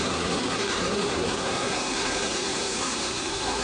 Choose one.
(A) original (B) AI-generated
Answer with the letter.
B